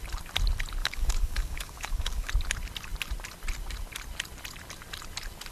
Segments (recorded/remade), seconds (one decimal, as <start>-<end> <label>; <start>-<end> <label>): 0.0-0.8 recorded; 0.8-2.3 remade; 2.3-5.5 recorded